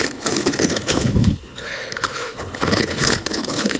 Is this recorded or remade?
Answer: remade